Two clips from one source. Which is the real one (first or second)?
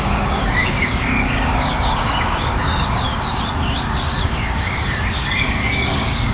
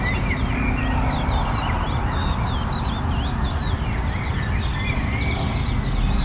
second